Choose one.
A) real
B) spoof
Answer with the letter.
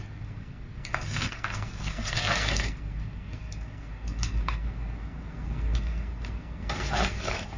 B